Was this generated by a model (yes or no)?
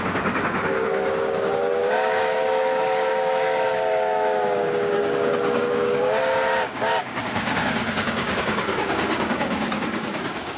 yes